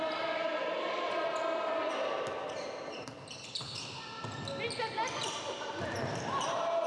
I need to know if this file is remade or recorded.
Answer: recorded